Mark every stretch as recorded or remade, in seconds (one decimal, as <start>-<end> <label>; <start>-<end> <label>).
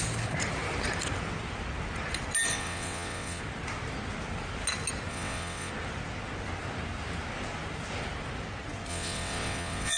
0.0-2.5 recorded; 2.5-3.4 remade; 3.4-5.1 recorded; 5.1-5.7 remade; 5.7-8.9 recorded; 8.9-10.0 remade